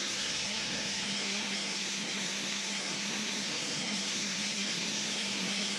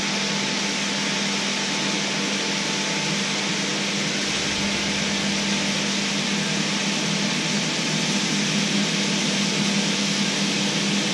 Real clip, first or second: second